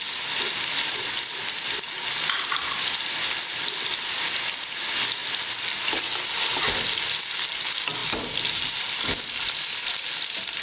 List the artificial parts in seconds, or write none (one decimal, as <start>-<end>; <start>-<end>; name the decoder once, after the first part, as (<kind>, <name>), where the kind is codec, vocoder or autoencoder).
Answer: none